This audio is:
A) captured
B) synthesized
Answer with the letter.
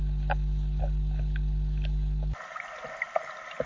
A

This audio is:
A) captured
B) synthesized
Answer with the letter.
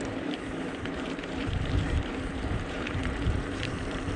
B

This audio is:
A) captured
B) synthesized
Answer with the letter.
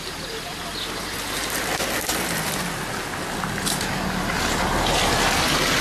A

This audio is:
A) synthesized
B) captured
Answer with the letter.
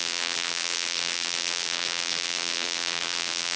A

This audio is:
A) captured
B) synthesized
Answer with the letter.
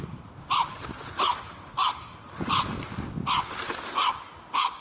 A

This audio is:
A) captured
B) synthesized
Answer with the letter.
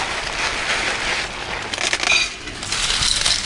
A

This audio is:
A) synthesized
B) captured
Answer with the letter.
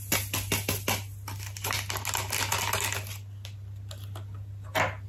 B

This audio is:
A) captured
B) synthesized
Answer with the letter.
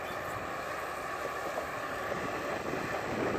A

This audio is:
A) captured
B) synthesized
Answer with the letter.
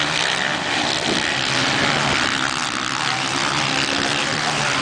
A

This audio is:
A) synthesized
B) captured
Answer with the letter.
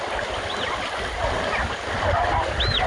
B